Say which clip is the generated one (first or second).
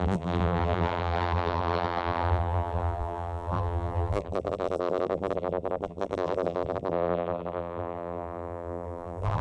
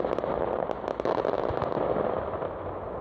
first